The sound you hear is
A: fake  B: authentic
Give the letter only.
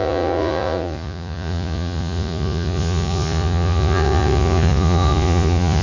A